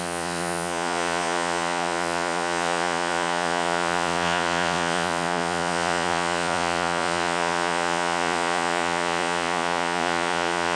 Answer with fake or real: fake